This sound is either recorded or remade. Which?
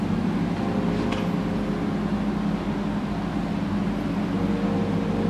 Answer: recorded